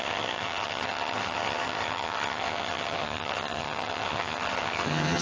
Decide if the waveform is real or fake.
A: fake